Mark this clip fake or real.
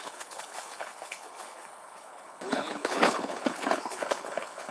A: fake